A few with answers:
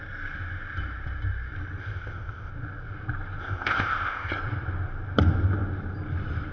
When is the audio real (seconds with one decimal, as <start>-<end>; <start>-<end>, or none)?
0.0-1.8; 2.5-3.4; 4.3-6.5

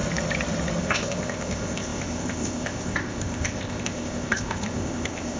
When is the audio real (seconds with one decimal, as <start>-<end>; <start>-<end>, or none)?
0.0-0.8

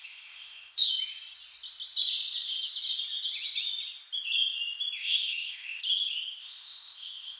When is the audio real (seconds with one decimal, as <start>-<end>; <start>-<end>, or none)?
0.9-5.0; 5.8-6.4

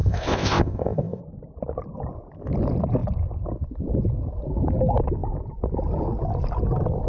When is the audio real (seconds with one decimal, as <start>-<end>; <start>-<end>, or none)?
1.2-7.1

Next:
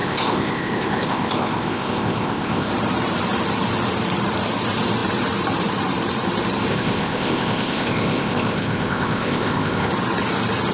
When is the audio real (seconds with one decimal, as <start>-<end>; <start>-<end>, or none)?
2.7-6.7; 9.9-10.7

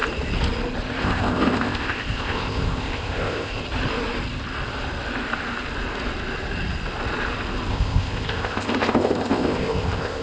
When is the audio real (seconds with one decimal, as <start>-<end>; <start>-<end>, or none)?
0.0-1.0; 3.6-7.7